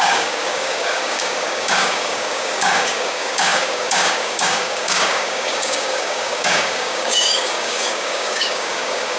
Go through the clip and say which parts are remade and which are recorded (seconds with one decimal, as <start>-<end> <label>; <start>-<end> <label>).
0.0-9.2 remade